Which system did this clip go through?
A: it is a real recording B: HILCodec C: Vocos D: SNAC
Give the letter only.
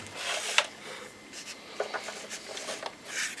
A